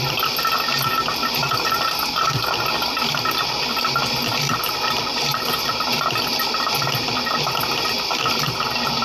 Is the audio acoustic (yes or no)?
yes